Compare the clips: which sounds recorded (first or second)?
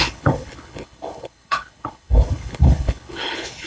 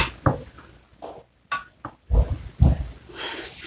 second